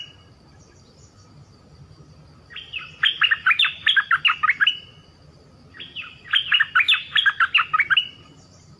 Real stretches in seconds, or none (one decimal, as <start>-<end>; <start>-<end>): 0.0-8.8